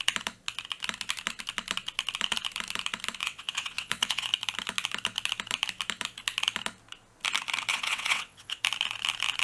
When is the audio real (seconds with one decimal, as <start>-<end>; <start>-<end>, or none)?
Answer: 0.0-3.2; 4.3-7.7; 8.6-9.4